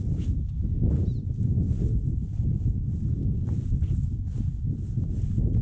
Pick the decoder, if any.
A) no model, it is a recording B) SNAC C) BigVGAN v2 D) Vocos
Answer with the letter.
A